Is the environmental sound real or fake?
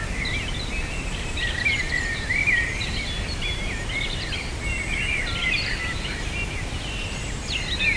real